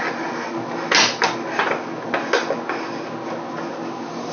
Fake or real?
real